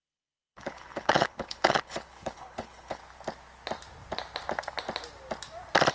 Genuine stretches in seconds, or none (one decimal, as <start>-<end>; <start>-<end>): 3.0-5.9